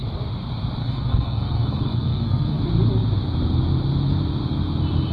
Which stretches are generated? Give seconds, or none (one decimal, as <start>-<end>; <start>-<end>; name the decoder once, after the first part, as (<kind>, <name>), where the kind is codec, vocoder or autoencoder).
0.8-2.6 (codec, SNAC)